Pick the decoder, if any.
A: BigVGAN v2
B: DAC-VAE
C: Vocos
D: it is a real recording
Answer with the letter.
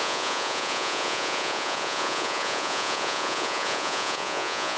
C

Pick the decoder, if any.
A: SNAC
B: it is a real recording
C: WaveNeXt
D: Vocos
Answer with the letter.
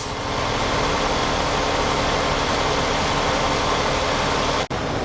B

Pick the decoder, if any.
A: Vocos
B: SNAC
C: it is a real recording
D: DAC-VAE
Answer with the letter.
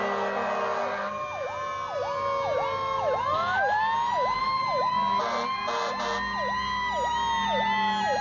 C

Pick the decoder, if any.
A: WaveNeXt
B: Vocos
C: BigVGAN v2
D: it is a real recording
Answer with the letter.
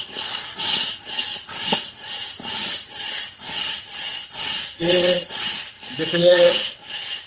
B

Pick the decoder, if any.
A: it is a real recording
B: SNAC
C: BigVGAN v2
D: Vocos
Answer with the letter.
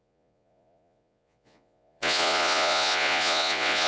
D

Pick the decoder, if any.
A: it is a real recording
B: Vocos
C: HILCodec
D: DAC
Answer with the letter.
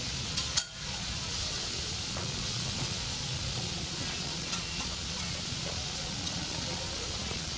B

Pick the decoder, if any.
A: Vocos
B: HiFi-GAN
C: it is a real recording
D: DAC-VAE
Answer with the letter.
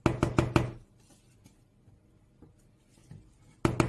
C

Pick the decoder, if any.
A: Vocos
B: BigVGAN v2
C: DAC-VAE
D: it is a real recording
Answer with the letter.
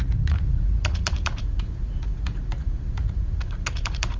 A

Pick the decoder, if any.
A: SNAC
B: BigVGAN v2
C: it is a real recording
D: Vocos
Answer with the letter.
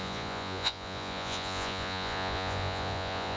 D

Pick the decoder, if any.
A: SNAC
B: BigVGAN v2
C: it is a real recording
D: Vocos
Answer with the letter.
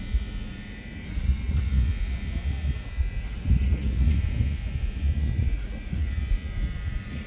D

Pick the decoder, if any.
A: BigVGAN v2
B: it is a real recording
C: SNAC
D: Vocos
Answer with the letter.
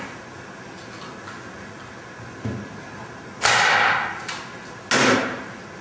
B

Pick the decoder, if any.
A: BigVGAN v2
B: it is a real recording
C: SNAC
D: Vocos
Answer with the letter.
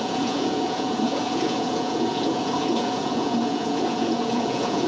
D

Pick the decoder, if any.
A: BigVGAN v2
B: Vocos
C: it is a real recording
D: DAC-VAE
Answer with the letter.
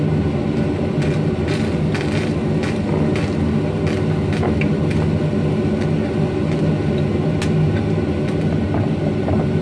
C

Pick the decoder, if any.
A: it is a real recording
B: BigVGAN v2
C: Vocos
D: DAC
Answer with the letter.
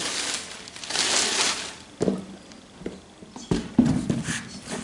A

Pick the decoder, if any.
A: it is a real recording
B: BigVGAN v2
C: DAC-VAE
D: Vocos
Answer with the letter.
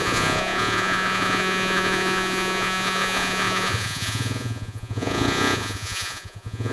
D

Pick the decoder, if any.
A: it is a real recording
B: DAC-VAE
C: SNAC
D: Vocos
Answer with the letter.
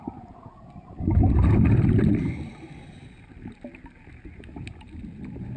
A